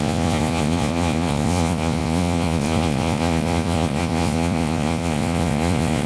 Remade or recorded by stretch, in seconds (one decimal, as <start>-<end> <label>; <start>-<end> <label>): 0.0-6.1 remade